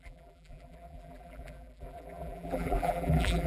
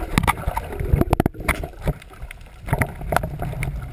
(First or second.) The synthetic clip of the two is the first